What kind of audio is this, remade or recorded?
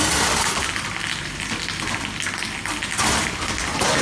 recorded